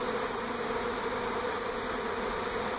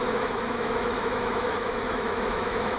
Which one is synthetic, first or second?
second